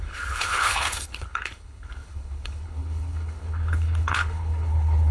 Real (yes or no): no